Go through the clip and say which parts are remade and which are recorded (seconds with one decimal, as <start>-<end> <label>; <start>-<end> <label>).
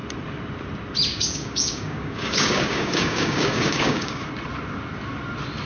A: 0.0-1.1 recorded; 1.1-4.2 remade; 4.2-5.7 recorded